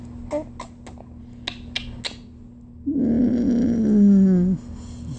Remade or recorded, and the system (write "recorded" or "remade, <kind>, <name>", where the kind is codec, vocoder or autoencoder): recorded